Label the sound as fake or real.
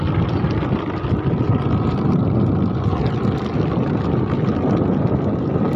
real